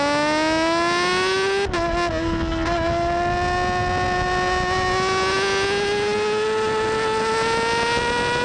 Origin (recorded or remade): recorded